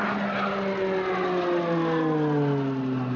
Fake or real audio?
real